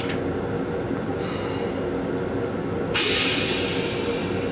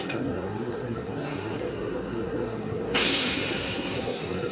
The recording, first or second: first